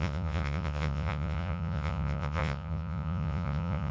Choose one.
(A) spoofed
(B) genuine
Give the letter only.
A